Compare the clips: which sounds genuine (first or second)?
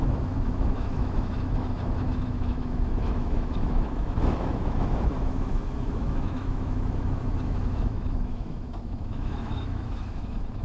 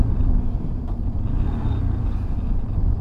second